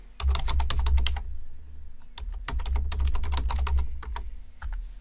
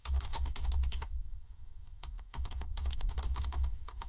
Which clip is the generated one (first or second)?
second